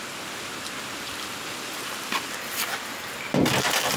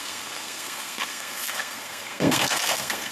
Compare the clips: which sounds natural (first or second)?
first